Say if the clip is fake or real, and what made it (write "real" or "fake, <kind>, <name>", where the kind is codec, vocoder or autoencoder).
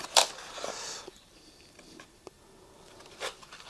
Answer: fake, vocoder, BigVGAN v2